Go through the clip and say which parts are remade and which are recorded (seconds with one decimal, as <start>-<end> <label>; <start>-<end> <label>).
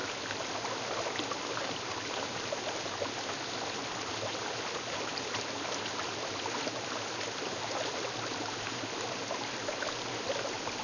0.0-10.8 recorded